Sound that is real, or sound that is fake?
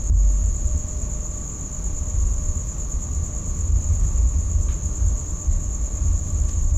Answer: real